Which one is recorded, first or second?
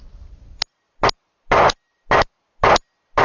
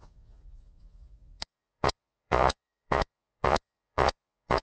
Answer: first